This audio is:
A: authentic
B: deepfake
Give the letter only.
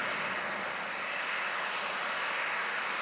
A